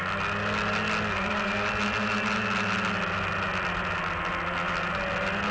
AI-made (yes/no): no